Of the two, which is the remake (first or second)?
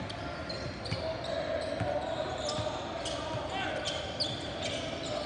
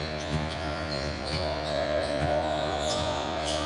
second